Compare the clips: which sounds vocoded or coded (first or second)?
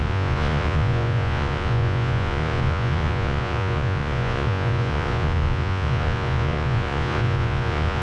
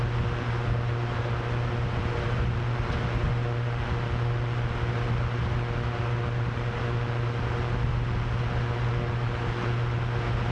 first